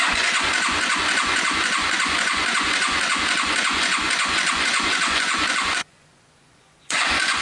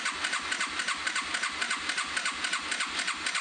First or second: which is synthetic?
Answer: first